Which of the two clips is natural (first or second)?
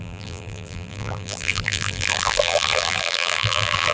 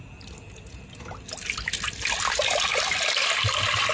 second